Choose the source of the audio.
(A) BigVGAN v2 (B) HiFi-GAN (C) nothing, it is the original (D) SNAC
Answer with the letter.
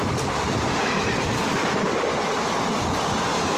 C